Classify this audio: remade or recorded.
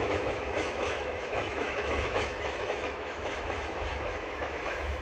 remade